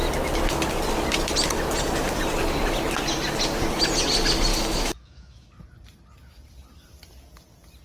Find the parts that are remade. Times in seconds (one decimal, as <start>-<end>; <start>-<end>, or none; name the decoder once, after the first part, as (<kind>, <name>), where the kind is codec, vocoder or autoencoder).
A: 4.5-5.5 (autoencoder, DAC-VAE)